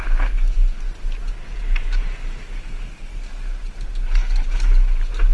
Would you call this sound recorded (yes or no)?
yes